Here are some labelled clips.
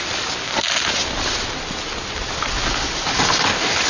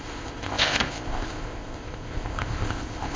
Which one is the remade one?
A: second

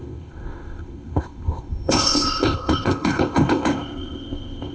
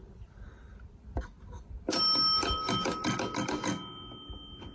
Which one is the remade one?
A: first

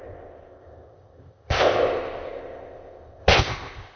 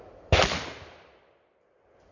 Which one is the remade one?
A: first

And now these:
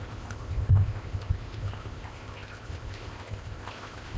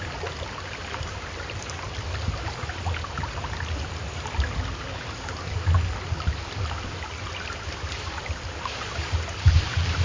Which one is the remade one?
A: first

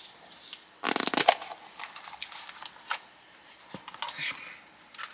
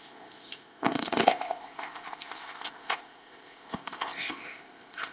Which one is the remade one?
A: second